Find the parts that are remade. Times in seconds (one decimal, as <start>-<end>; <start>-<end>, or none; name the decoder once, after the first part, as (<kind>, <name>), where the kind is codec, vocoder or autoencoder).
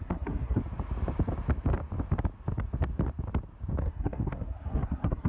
0.0-0.6 (codec, SNAC); 3.8-5.3